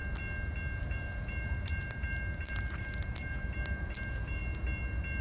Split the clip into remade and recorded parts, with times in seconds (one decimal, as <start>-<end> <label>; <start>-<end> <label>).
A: 0.0-0.8 recorded; 0.8-4.4 remade; 4.4-5.2 recorded